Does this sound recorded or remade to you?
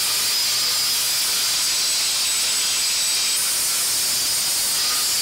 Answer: recorded